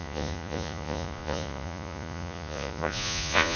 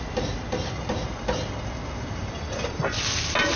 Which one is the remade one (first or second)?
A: first